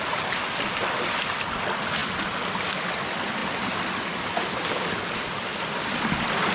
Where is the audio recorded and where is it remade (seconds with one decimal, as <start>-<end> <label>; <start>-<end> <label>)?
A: 0.0-6.5 recorded